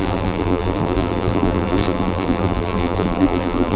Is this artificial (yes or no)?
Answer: yes